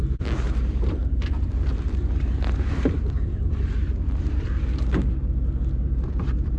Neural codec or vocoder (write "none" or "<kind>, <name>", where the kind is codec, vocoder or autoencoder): vocoder, BigVGAN v2